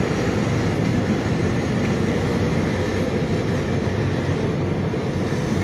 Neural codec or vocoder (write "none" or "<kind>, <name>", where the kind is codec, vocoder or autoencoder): none